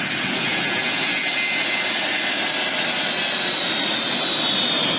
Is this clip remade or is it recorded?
recorded